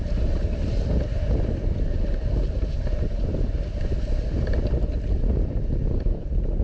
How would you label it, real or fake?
real